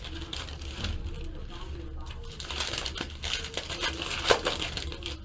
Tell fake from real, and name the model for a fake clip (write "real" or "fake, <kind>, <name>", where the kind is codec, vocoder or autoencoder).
real